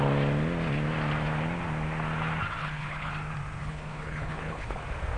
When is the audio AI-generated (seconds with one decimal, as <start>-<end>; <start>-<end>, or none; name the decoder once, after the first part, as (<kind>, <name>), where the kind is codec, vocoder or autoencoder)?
2.6-3.1 (codec, HILCodec); 3.6-4.8